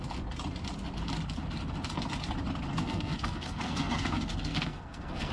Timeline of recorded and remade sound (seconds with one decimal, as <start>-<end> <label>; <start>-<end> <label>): 0.0-2.7 recorded; 2.7-5.3 remade